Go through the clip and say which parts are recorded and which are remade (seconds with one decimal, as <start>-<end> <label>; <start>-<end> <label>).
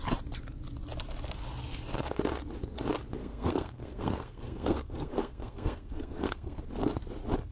0.0-3.2 recorded; 3.2-6.6 remade; 6.6-7.5 recorded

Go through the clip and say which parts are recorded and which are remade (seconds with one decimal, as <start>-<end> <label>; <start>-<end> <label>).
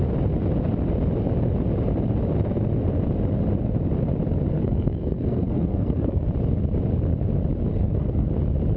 0.0-4.5 recorded; 4.5-6.2 remade; 6.2-7.7 recorded; 7.7-8.3 remade; 8.3-8.8 recorded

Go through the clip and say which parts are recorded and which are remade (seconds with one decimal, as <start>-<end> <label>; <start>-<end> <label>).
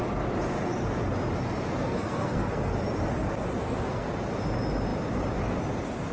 0.0-1.8 recorded; 1.8-2.7 remade; 2.7-3.6 recorded; 3.6-4.1 remade; 4.1-6.1 recorded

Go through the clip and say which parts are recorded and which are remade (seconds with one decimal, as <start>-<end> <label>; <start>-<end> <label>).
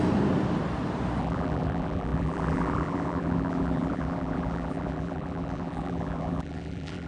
0.0-1.2 recorded; 1.2-7.1 remade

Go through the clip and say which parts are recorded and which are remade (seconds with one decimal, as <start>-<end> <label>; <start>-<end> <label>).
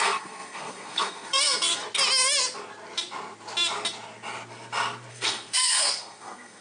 0.0-1.8 remade; 1.8-5.1 recorded; 5.1-6.6 remade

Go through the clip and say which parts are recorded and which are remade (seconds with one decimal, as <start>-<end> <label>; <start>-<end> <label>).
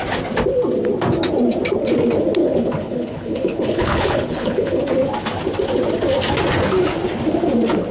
0.0-2.4 recorded; 2.4-4.8 remade; 4.8-7.9 recorded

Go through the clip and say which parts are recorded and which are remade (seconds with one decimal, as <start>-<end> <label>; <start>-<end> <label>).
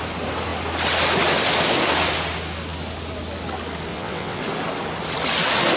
0.0-3.9 recorded; 3.9-4.4 remade; 4.4-5.8 recorded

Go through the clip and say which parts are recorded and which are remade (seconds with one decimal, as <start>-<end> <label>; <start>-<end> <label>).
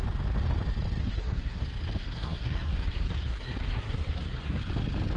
0.0-1.0 recorded; 1.0-1.6 remade; 1.6-2.0 recorded; 2.0-4.6 remade; 4.6-5.2 recorded